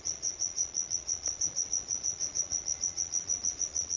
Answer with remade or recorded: remade